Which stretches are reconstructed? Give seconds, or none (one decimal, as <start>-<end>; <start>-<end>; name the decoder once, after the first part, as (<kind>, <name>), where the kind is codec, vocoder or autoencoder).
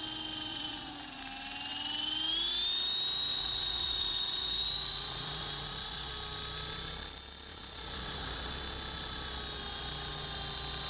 0.5-1.2 (vocoder, Vocos); 3.3-6.1; 7.5-8.5